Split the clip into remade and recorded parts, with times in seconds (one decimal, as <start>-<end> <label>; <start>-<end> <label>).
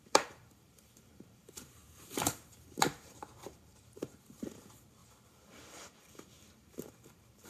0.0-7.5 remade